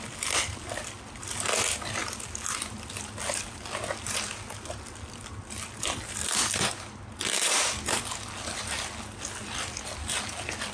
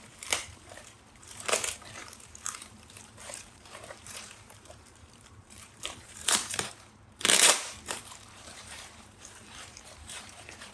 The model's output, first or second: second